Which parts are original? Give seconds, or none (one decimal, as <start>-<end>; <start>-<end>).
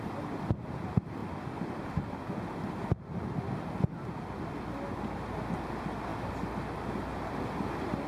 0.0-8.1